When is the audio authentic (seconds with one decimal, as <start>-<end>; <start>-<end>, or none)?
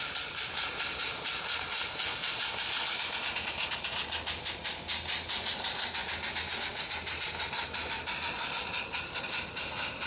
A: 0.0-10.1